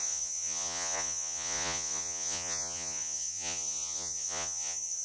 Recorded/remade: remade